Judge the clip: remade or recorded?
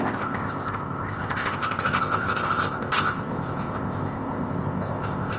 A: remade